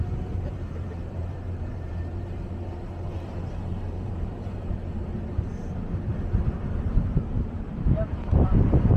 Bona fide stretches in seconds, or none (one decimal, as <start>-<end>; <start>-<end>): 6.1-6.9